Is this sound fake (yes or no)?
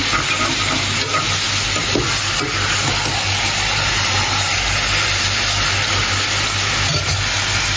no